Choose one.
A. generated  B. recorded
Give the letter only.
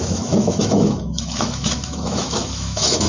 A